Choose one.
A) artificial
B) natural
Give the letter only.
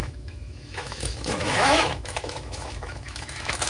A